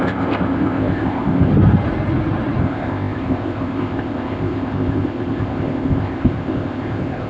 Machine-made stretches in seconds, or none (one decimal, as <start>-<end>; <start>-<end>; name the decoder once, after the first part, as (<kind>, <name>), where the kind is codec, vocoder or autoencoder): 0.0-1.5 (codec, ZipCodec); 2.6-7.3